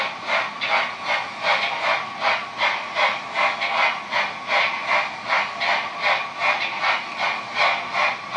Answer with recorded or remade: recorded